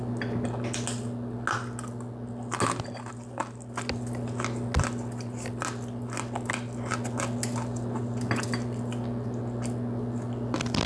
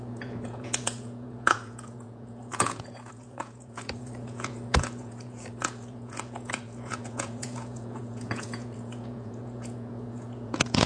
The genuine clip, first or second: first